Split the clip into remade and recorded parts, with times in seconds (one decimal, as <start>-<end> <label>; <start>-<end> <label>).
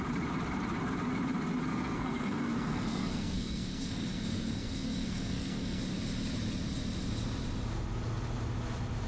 0.0-1.7 recorded; 1.7-5.8 remade; 5.8-9.1 recorded